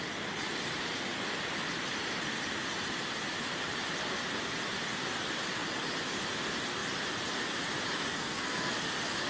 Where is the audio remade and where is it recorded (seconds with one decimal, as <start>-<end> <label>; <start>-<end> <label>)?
0.0-8.1 recorded; 8.1-8.7 remade; 8.7-9.3 recorded